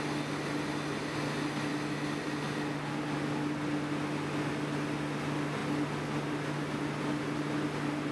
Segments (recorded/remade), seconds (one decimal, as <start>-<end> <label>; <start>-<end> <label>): 0.0-8.1 recorded